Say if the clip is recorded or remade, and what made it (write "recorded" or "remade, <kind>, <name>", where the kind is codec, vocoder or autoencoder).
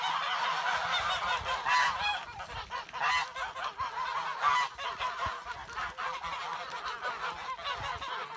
recorded